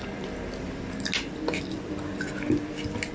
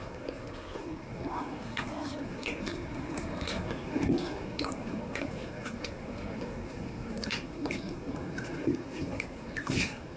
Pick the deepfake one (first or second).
second